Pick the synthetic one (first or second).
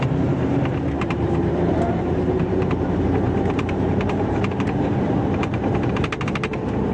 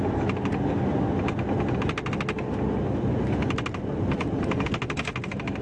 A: first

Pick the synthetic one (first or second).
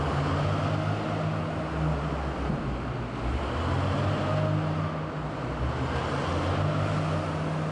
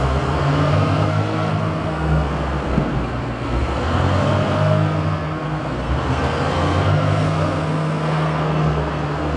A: second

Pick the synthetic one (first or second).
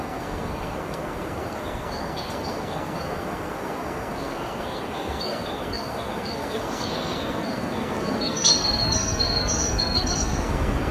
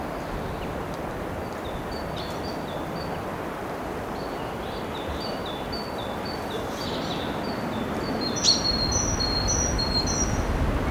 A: first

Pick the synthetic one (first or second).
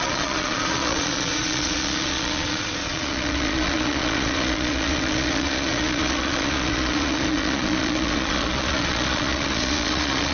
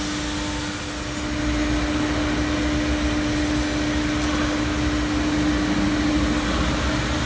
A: first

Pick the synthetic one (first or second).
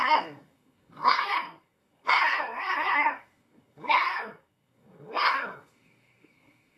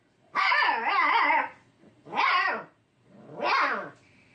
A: first